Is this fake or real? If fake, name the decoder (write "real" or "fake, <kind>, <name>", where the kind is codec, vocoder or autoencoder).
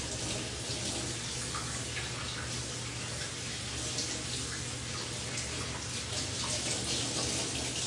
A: real